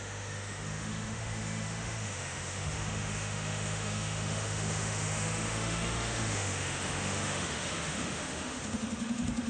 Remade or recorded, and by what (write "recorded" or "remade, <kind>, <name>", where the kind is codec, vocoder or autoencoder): remade, autoencoder, DAC-VAE